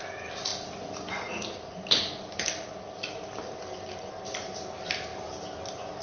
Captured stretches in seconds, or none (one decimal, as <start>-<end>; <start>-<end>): 0.0-6.0